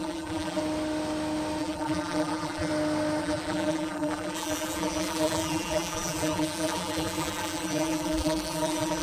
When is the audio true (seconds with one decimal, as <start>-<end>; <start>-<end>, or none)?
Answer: 0.6-1.6; 2.7-3.2